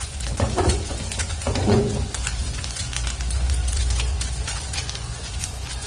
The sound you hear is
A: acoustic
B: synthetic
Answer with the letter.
B